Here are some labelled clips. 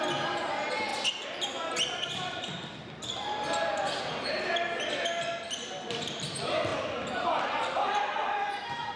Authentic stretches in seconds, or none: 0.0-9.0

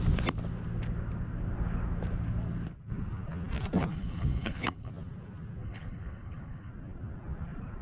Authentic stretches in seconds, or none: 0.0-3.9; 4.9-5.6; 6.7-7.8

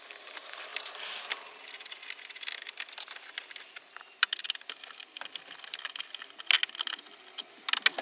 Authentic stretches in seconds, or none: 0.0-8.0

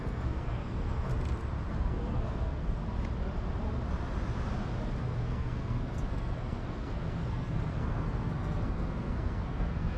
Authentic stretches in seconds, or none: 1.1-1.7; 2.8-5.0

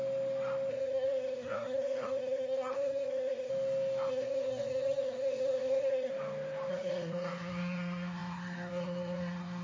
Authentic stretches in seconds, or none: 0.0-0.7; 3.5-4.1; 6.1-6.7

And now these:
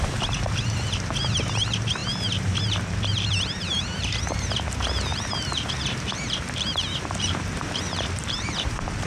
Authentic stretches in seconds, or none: none

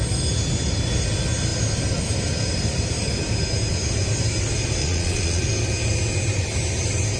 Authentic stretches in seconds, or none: 0.0-4.8; 5.4-7.2